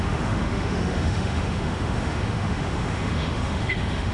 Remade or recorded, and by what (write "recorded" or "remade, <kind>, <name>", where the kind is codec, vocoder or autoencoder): remade, autoencoder, DAC-VAE